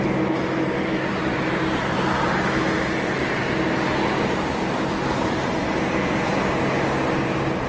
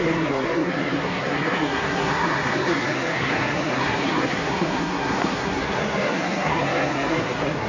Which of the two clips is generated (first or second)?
second